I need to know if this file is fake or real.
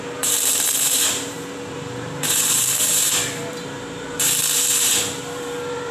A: fake